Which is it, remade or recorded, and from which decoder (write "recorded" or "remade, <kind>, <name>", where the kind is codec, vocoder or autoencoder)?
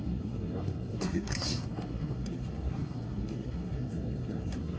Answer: remade, codec, SNAC